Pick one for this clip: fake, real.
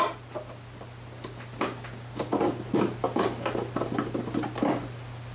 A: real